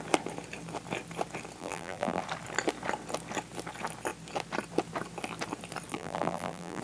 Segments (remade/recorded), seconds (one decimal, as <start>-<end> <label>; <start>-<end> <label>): 0.0-1.6 recorded; 1.6-2.2 remade; 2.2-5.9 recorded; 5.9-6.8 remade